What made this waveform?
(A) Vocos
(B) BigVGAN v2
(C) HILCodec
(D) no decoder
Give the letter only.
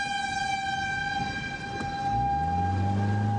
D